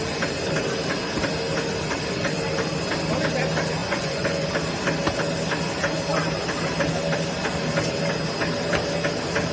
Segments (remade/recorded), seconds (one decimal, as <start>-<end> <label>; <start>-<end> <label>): 0.0-3.8 recorded; 3.8-4.5 remade; 4.5-9.5 recorded